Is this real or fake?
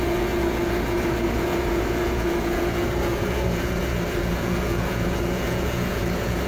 fake